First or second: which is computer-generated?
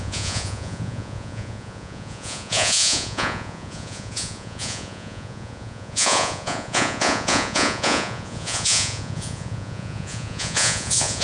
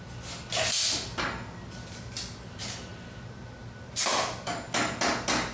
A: first